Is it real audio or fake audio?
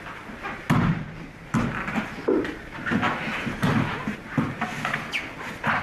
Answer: real